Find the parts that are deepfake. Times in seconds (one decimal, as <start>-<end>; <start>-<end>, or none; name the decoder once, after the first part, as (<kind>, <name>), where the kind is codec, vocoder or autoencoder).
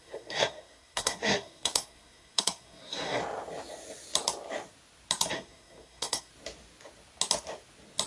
0.0-3.2 (codec, SNAC); 5.3-6.3